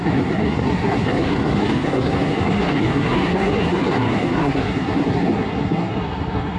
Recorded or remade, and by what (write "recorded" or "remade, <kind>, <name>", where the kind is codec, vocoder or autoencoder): remade, codec, SNAC